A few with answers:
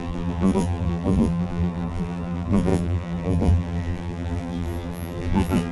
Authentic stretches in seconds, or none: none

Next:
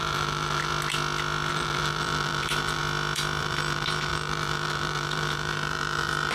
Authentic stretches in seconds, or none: 0.7-1.5; 2.8-3.4

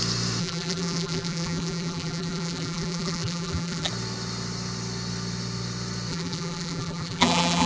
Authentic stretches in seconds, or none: 0.0-0.4; 3.9-6.1

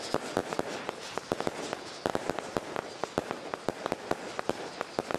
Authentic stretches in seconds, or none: 0.0-5.2

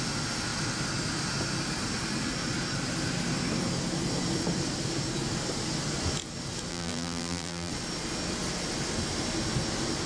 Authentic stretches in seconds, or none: 0.0-6.7; 7.7-10.1

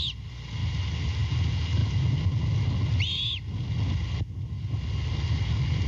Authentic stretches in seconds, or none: 0.0-5.9

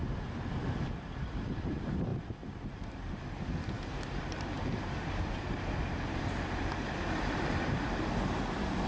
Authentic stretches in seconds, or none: 0.0-0.7; 2.1-3.8